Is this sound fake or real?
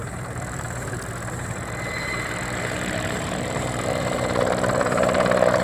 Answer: fake